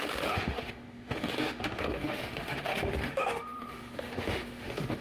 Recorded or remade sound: remade